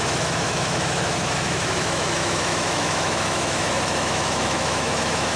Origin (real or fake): fake